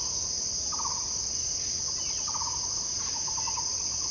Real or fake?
real